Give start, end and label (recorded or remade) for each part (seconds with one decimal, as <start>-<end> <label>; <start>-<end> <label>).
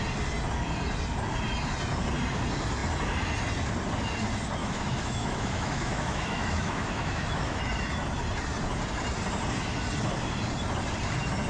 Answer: 0.0-4.6 recorded; 4.6-7.6 remade; 7.6-11.5 recorded